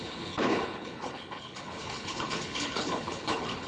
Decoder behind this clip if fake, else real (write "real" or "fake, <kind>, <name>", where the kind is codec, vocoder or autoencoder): fake, codec, HILCodec